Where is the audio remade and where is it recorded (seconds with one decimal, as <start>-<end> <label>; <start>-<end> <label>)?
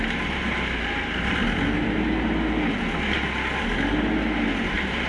0.0-5.1 recorded